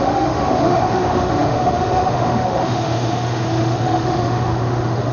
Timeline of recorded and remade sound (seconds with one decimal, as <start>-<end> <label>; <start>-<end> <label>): 0.0-5.1 remade